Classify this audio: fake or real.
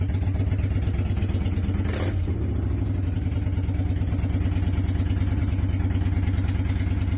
real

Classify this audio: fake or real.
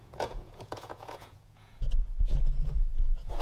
fake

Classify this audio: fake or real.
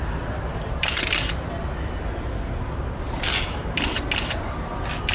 real